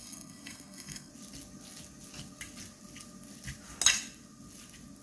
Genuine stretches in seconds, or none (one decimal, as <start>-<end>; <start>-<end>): 1.1-5.0